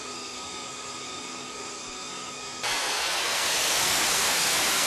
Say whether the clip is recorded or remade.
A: remade